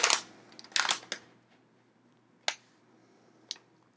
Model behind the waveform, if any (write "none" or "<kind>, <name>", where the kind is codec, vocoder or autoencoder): none